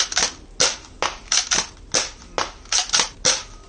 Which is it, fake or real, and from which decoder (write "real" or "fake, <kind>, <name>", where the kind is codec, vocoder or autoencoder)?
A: real